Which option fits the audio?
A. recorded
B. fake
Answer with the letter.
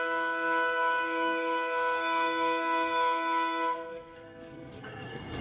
B